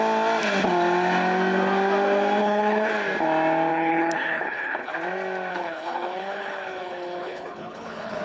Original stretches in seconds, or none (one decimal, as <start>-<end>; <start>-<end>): 0.0-2.4; 2.9-3.7; 4.9-5.5